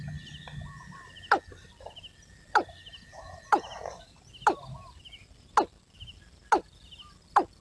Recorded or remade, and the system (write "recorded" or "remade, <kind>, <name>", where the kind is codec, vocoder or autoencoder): recorded